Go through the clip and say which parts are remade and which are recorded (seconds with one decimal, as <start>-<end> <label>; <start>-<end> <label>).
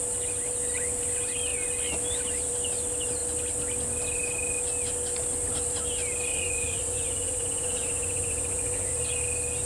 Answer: 0.0-6.3 recorded; 6.3-9.0 remade; 9.0-9.7 recorded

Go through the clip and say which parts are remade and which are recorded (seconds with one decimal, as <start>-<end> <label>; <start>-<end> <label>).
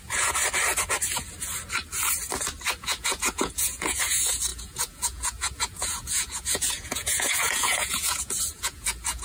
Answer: 0.0-0.4 remade; 0.4-2.8 recorded; 2.8-9.2 remade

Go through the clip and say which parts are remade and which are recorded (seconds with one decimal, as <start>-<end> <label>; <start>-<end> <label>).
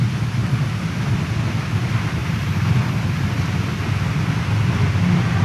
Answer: 0.0-5.4 recorded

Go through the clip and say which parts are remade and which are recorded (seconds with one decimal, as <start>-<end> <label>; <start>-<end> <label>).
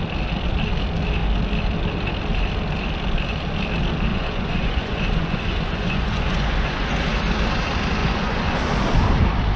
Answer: 0.0-4.1 recorded; 4.1-6.9 remade; 6.9-8.0 recorded; 8.0-8.6 remade; 8.6-9.6 recorded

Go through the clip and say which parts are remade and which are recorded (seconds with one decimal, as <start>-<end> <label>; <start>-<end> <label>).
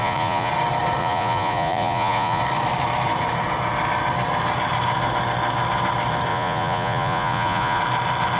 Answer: 0.0-0.5 remade; 0.5-1.0 recorded; 1.0-2.4 remade; 2.4-6.3 recorded; 6.3-7.8 remade; 7.8-8.4 recorded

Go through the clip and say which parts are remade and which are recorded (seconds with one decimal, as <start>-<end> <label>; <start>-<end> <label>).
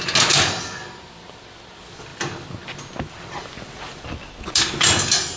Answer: 0.0-5.4 recorded